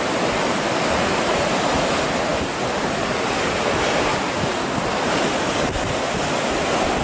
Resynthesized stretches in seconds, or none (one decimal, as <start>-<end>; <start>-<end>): none